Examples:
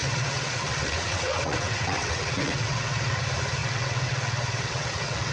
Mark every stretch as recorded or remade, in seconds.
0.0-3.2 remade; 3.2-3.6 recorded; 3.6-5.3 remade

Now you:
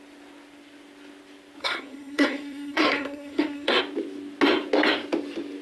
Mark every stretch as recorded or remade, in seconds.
0.0-1.6 recorded; 1.6-3.8 remade; 3.8-5.6 recorded

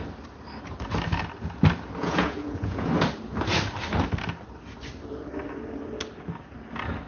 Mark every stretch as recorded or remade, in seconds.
0.0-2.0 recorded; 2.0-2.9 remade; 2.9-7.1 recorded

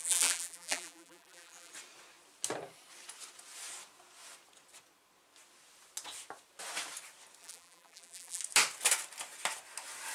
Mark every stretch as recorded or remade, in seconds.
0.0-1.7 remade; 1.7-7.4 recorded; 7.4-8.4 remade; 8.4-10.1 recorded

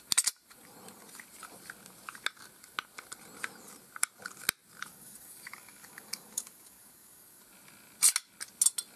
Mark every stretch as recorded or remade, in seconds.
0.0-4.9 recorded; 4.9-7.4 remade; 7.4-9.0 recorded

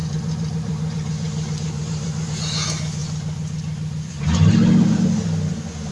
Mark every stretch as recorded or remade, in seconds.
0.0-2.3 remade; 2.3-5.9 recorded